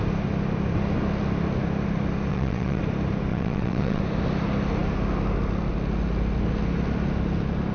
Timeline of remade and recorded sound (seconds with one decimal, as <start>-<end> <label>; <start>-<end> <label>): 0.0-2.3 recorded; 2.3-2.8 remade; 2.8-3.3 recorded; 3.3-4.0 remade; 4.0-7.7 recorded

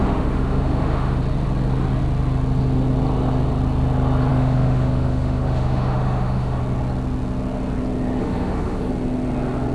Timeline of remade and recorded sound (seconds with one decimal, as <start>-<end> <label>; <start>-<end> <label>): 0.0-1.2 remade; 1.2-4.3 recorded; 4.3-6.6 remade; 6.6-8.2 recorded; 8.2-8.9 remade; 8.9-9.7 recorded

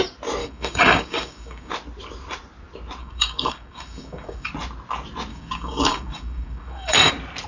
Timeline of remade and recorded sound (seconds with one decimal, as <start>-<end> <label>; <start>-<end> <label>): 0.0-0.4 recorded; 0.4-1.7 remade; 1.7-3.0 recorded; 3.0-4.5 remade; 4.5-5.3 recorded; 5.3-7.1 remade; 7.1-7.5 recorded

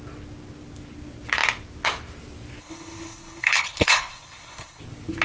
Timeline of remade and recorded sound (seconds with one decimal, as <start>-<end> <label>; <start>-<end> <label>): 0.0-2.6 recorded; 2.6-4.8 remade; 4.8-5.2 recorded